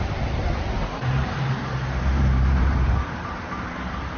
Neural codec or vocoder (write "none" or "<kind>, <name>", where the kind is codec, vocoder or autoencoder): vocoder, BigVGAN v2